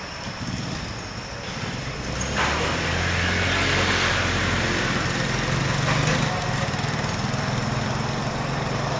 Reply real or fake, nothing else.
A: real